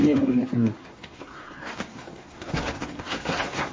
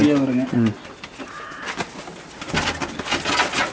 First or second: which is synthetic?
first